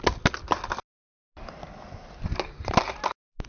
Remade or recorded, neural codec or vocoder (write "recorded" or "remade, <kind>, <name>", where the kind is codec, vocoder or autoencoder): recorded